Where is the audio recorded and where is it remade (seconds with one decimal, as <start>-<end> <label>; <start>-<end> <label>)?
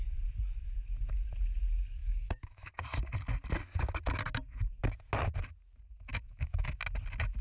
0.0-2.0 recorded; 2.0-2.7 remade; 2.7-6.1 recorded; 6.1-6.8 remade; 6.8-7.4 recorded